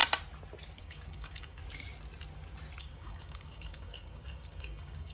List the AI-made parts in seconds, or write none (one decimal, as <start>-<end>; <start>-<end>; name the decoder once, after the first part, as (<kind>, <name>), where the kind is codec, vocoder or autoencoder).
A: 0.8-1.6 (codec, DAC); 2.8-5.1